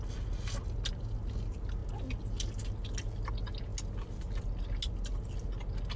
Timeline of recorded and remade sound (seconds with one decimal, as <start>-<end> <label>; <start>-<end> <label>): 0.0-6.0 recorded